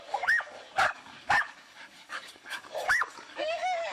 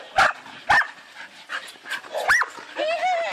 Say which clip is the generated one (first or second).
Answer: first